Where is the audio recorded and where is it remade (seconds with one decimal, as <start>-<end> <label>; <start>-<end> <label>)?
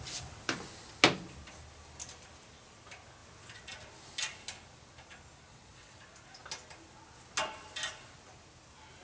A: 0.0-5.5 recorded; 5.5-6.0 remade; 6.0-9.0 recorded